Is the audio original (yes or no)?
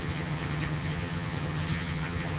no